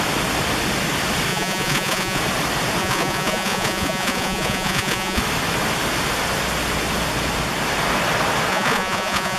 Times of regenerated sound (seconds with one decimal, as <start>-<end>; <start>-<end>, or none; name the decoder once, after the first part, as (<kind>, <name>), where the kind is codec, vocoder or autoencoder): 1.3-2.2 (vocoder, Vocos); 2.8-5.2; 8.5-9.4